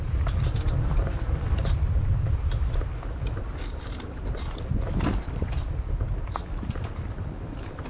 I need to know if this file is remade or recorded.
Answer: remade